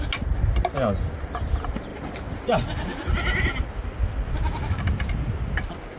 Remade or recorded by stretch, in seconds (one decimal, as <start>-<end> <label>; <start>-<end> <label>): 0.0-6.0 recorded

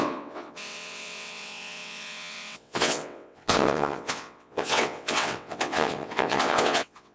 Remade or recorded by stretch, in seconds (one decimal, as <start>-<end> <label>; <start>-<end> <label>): 0.0-7.1 remade